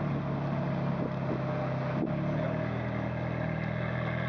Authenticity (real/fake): real